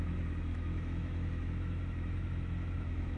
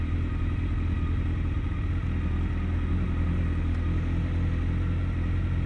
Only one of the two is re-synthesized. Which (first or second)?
first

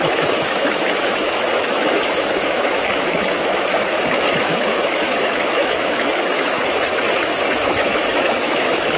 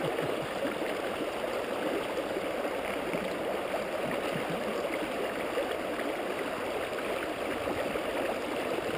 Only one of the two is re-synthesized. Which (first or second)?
first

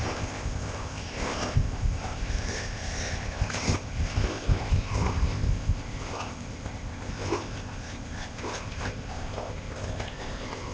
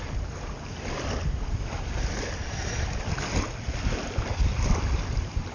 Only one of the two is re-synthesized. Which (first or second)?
first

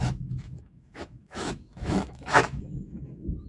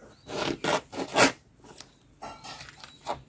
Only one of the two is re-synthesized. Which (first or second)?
first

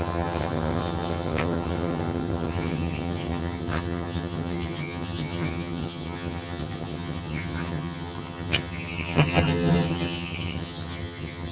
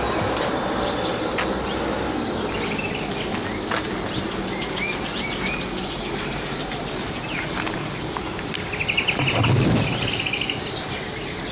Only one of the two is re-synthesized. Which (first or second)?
first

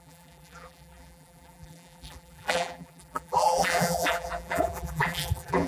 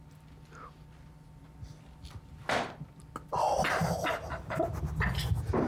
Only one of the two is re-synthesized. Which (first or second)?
first